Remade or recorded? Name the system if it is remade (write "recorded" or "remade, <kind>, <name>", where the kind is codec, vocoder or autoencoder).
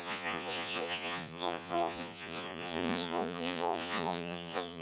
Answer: remade, vocoder, Vocos